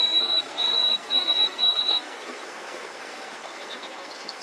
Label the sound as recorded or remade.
remade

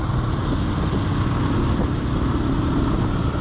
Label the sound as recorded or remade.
recorded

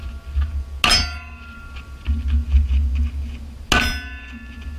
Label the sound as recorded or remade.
recorded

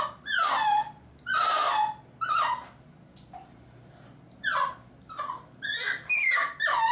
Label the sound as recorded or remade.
recorded